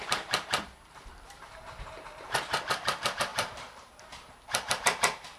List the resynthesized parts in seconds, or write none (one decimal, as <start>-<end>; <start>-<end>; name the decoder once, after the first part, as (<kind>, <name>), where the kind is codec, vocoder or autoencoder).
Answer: 0.0-5.4 (vocoder, BigVGAN v2)